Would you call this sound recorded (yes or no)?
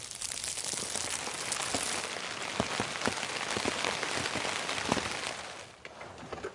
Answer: yes